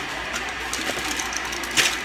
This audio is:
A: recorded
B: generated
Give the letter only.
A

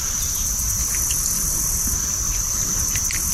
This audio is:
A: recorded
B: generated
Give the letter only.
A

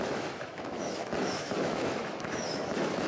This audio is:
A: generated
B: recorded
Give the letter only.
A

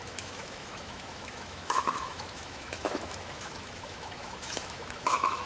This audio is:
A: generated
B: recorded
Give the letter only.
A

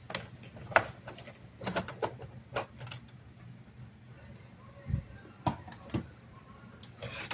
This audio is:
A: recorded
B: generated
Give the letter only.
A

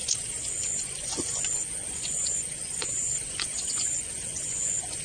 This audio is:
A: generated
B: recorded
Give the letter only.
A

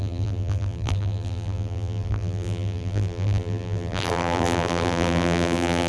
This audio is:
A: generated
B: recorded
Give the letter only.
A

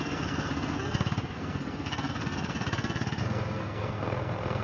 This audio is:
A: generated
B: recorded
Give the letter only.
A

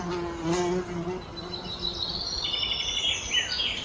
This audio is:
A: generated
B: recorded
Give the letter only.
B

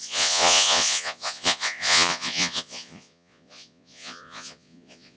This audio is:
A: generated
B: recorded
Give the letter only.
A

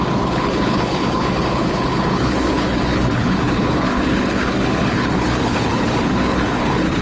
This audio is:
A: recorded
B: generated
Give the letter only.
B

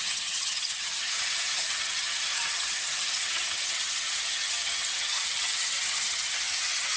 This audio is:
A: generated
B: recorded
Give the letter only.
A